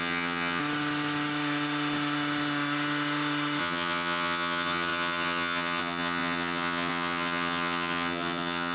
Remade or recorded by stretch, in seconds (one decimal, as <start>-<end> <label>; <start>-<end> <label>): 0.0-0.6 remade; 0.6-3.6 recorded; 3.6-8.7 remade